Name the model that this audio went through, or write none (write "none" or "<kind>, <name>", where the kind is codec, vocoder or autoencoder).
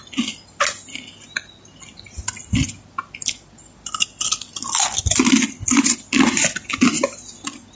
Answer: none